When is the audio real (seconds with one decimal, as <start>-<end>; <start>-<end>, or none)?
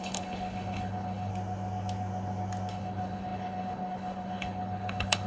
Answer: 1.3-2.7